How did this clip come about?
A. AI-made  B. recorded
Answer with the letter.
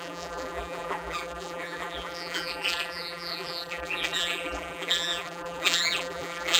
A